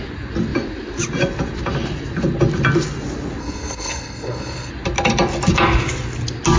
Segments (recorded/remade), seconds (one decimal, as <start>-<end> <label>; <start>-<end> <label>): 0.0-3.4 recorded; 3.4-4.7 remade; 4.7-6.6 recorded